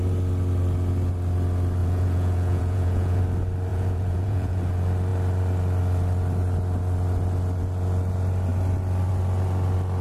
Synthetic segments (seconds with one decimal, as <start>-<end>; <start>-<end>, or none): 1.8-3.2; 3.7-4.6